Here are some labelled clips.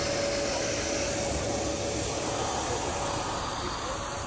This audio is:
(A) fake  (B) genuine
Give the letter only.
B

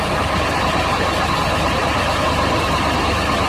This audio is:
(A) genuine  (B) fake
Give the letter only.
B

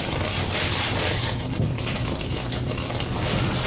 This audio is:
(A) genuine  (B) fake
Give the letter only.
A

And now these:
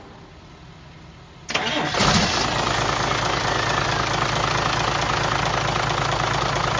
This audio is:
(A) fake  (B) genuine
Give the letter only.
B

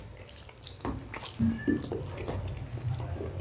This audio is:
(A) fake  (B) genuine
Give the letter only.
B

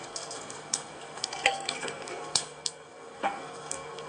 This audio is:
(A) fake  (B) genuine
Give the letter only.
A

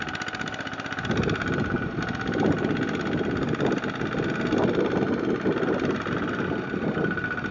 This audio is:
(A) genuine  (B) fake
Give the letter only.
A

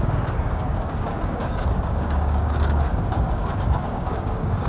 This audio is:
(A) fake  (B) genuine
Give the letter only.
A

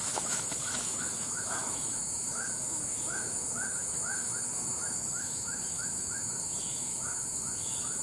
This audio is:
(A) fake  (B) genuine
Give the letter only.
A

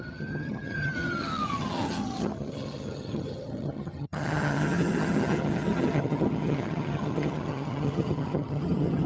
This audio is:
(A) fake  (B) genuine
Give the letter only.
A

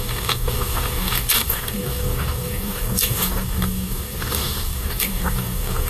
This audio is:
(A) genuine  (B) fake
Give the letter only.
B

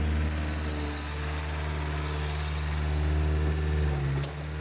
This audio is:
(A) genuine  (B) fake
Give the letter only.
A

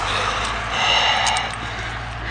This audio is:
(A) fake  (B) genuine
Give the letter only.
B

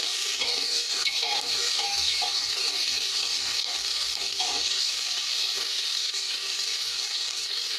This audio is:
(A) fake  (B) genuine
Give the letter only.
A